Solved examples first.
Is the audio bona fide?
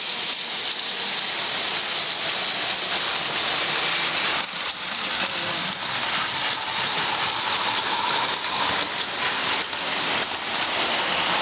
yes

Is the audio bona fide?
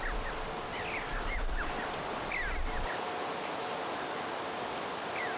yes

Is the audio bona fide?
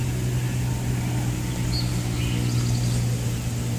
yes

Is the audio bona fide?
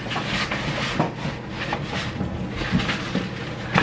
yes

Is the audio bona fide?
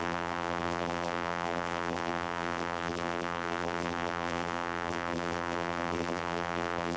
no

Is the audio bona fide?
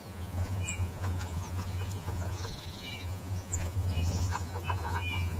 no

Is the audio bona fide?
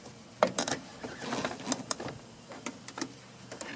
yes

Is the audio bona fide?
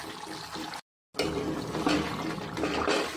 yes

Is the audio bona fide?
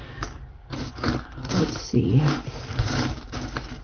no